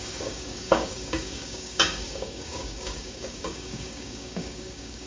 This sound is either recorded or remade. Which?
remade